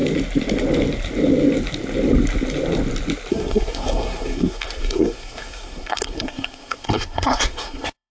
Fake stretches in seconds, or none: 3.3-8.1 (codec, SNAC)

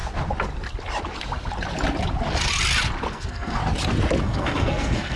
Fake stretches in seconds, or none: 3.1-3.6 (codec, SNAC); 4.2-5.2

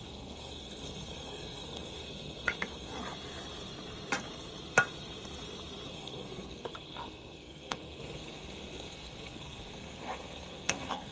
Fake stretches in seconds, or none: 0.0-2.9 (codec, SNAC); 5.9-11.1

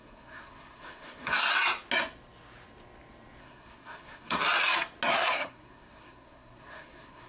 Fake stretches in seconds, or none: 0.0-1.5 (codec, SNAC); 3.4-4.4; 5.1-7.3

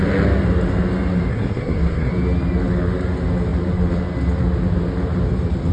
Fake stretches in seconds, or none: 1.3-2.1 (codec, SNAC)